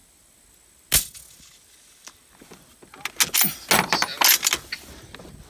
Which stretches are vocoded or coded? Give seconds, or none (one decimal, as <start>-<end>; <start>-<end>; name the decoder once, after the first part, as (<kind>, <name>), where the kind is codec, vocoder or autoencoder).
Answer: none